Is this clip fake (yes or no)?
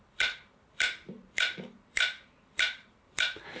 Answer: yes